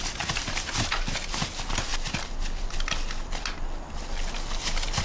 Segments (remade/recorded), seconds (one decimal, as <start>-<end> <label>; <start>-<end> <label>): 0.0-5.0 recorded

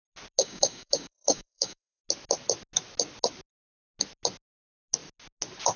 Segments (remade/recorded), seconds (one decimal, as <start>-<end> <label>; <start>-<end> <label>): 0.0-0.4 recorded; 0.4-2.0 remade; 2.0-5.8 recorded

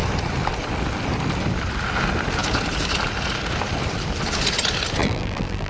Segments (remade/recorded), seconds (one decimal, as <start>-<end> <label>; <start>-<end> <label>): 0.0-5.0 recorded; 5.0-5.7 remade

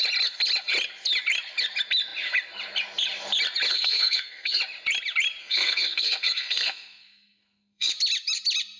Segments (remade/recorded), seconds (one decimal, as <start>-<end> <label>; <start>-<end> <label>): 0.0-3.7 recorded; 3.7-4.6 remade; 4.6-5.4 recorded; 5.4-7.9 remade; 7.9-8.8 recorded